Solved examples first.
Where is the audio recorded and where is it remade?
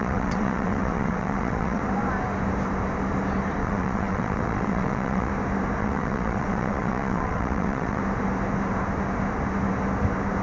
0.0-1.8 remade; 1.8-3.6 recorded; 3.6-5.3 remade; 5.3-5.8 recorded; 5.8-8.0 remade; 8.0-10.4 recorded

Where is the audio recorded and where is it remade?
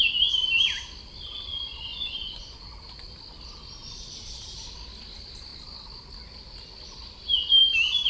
0.0-1.7 recorded; 1.7-2.6 remade; 2.6-8.1 recorded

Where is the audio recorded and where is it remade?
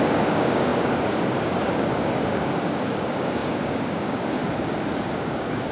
0.0-4.4 remade; 4.4-5.0 recorded; 5.0-5.7 remade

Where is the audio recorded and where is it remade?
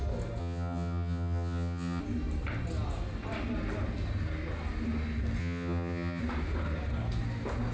0.0-0.4 recorded; 0.4-2.0 remade; 2.0-5.4 recorded; 5.4-6.2 remade; 6.2-7.7 recorded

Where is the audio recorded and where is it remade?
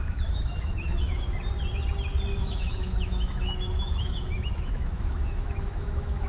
0.0-1.4 remade; 1.4-2.3 recorded; 2.3-6.3 remade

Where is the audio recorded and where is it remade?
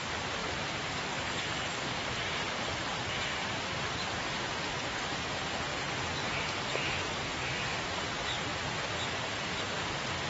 0.0-5.7 remade; 5.7-7.1 recorded; 7.1-8.5 remade; 8.5-9.3 recorded; 9.3-10.3 remade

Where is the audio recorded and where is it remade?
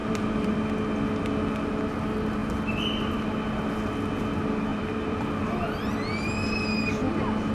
0.0-0.6 remade; 0.6-4.7 recorded; 4.7-5.4 remade; 5.4-7.5 recorded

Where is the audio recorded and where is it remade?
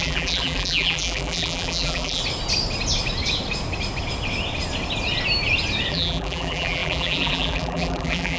0.0-2.2 remade; 2.2-5.9 recorded; 5.9-8.4 remade